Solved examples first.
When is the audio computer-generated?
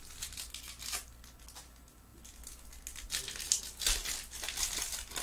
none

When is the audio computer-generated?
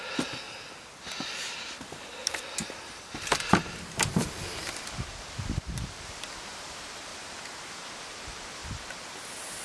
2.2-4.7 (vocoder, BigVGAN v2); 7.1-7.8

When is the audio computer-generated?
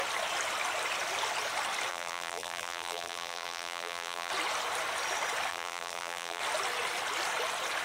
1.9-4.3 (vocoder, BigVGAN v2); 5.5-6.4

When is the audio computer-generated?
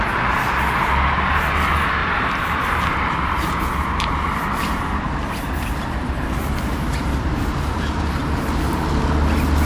2.0-4.4 (vocoder, BigVGAN v2); 6.7-8.8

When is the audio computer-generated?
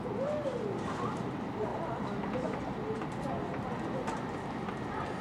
none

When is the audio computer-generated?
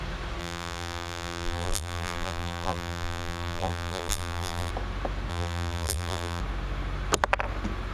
0.4-4.7 (vocoder, BigVGAN v2); 5.3-6.4